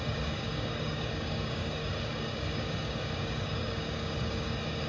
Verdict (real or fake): fake